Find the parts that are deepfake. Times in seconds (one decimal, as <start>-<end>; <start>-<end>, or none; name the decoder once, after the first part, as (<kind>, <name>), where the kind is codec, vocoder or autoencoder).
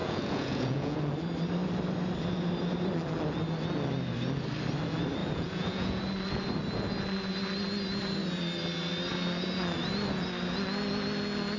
0.0-1.0 (vocoder, Vocos); 5.2-6.0